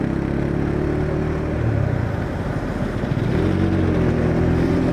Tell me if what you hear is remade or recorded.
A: recorded